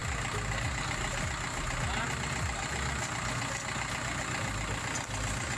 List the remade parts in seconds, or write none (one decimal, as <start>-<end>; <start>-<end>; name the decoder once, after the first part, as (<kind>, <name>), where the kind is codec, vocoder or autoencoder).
none